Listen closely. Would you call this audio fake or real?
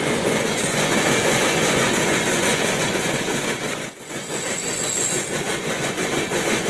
fake